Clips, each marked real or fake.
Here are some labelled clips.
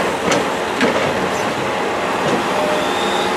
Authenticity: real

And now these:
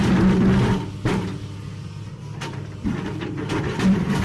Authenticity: fake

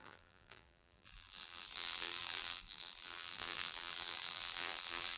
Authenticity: fake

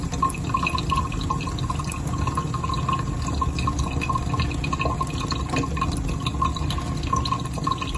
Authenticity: real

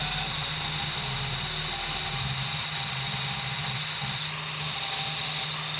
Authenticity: real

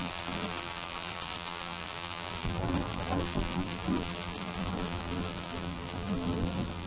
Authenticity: fake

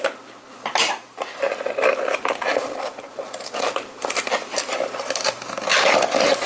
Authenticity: real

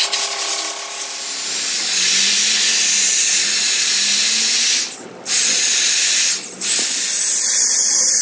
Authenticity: real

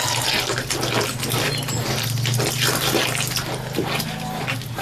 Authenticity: real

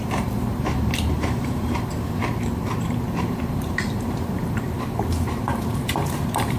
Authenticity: fake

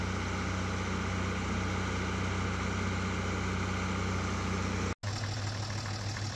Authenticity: real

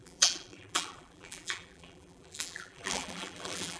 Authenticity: fake